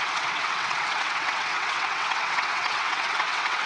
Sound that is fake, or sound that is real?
fake